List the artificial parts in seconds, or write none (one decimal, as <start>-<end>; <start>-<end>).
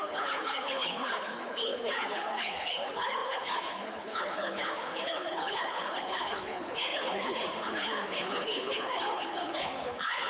0.0-10.3